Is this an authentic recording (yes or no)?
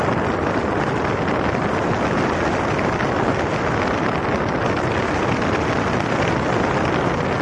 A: yes